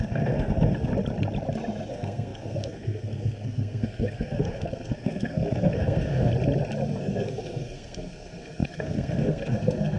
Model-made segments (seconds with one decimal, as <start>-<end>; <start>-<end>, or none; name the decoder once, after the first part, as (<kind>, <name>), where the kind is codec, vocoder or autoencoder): 0.0-0.9 (codec, SNAC); 1.9-6.3; 7.0-10.0